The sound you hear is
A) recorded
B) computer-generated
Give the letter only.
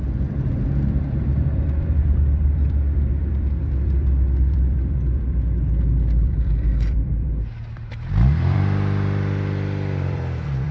B